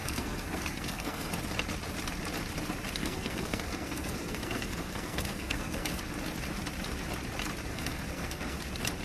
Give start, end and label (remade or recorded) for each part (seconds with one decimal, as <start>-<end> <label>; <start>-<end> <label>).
0.0-1.3 remade; 1.3-3.0 recorded; 3.0-6.0 remade; 6.0-7.7 recorded; 7.7-8.6 remade; 8.6-9.0 recorded